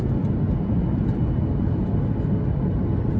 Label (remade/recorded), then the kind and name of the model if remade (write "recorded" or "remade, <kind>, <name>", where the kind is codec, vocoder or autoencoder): recorded